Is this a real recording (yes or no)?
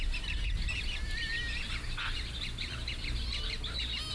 yes